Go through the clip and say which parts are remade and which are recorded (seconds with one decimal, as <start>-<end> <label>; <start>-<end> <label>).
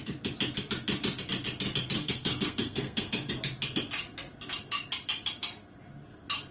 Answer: 0.0-2.0 recorded; 2.0-3.3 remade; 3.3-6.5 recorded